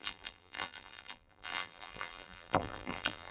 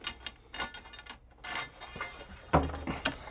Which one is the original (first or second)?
second